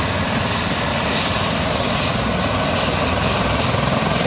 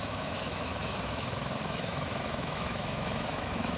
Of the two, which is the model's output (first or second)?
second